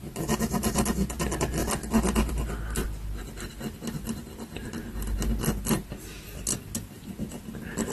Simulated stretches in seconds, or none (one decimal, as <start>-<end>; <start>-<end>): none